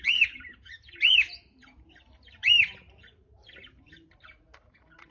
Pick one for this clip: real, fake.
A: fake